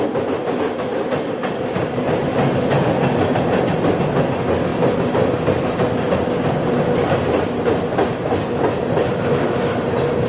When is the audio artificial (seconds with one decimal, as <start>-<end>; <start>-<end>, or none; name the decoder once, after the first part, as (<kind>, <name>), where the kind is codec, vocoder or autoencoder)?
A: none